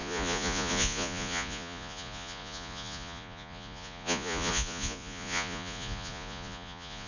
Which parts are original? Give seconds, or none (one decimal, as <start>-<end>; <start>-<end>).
none